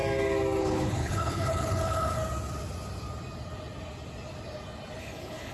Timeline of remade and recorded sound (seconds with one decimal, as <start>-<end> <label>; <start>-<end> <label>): 0.0-0.6 recorded; 0.6-2.2 remade; 2.2-5.0 recorded; 5.0-5.5 remade